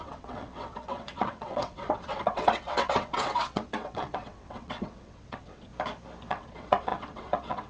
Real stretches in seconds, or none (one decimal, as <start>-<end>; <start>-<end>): 5.7-6.3